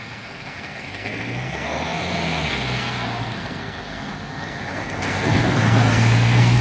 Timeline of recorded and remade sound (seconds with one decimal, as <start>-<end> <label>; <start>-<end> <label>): 0.0-6.6 remade